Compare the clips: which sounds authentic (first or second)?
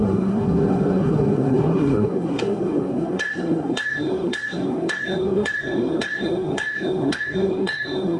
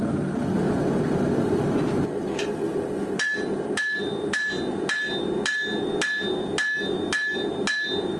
second